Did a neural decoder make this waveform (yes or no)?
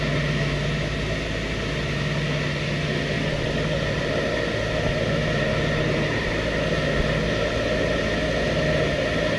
no